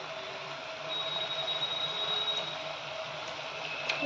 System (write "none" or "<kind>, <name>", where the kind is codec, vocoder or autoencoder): none